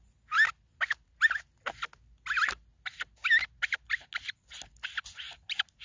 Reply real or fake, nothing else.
real